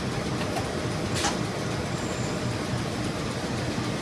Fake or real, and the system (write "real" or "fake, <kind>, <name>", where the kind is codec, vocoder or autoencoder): fake, vocoder, BigVGAN v2